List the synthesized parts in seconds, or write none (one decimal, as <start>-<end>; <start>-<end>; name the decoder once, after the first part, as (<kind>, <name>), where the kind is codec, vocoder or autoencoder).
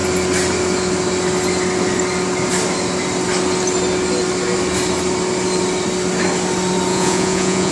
6.9-7.7 (vocoder, Vocos)